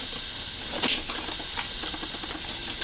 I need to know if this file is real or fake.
real